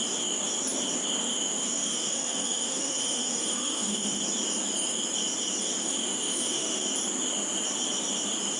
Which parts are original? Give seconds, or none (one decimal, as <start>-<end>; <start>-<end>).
0.0-1.2; 4.2-5.8; 6.9-8.6